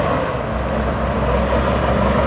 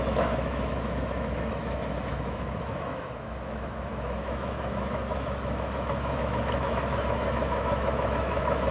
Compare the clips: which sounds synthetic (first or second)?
second